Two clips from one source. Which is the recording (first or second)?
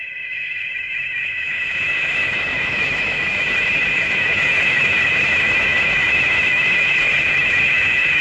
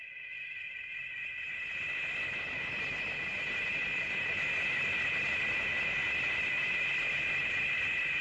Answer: second